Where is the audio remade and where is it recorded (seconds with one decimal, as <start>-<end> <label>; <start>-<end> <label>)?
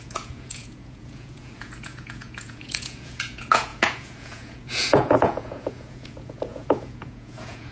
0.0-7.7 remade